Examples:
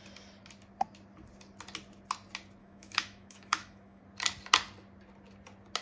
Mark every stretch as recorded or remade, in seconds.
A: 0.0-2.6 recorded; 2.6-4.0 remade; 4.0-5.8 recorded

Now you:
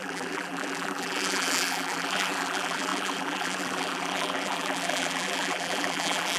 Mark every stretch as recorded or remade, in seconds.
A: 0.0-6.4 remade

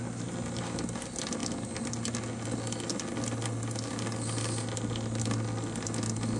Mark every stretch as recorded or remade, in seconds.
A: 0.0-6.4 recorded

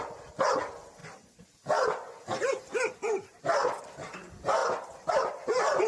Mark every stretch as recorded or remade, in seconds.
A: 0.0-4.6 recorded; 4.6-5.3 remade; 5.3-5.9 recorded

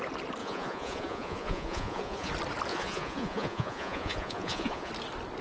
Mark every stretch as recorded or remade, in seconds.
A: 0.0-0.4 recorded; 0.4-2.3 remade; 2.3-2.7 recorded; 2.7-4.9 remade; 4.9-5.4 recorded

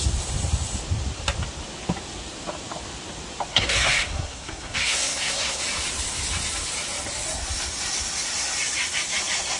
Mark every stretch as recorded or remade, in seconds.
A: 0.0-3.5 recorded; 3.5-5.6 remade; 5.6-9.6 recorded

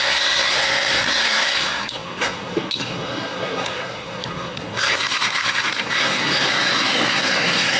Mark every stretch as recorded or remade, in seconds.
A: 0.0-7.8 remade

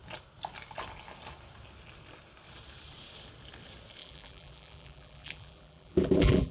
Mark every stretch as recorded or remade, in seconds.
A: 0.0-4.0 recorded; 4.0-6.5 remade